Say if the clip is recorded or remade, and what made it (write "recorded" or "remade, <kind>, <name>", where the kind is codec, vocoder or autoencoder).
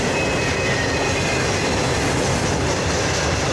recorded